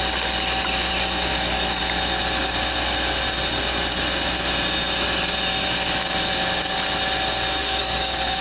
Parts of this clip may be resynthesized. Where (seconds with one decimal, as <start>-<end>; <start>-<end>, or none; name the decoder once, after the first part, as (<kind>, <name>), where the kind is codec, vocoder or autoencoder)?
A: 1.3-1.8 (codec, DAC); 7.6-8.4